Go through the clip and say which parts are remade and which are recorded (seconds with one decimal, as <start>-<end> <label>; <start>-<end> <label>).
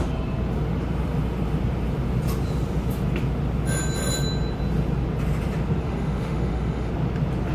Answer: 0.0-5.8 recorded; 5.8-6.9 remade; 6.9-7.5 recorded